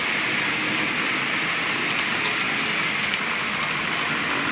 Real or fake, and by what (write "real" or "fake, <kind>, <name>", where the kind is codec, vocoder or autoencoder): real